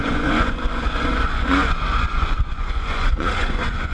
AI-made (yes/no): yes